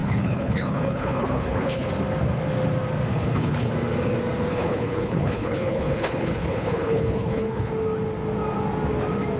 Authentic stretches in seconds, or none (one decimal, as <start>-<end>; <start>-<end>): 1.9-3.1; 3.7-4.5; 7.7-9.4